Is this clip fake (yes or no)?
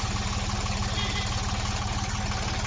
no